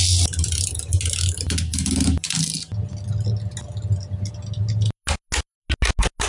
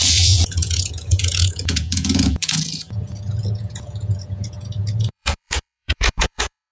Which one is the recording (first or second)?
first